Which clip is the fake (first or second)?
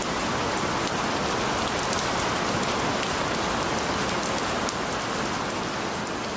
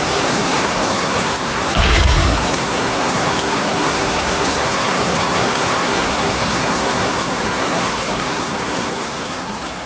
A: second